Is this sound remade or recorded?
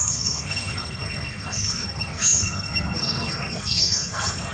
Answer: remade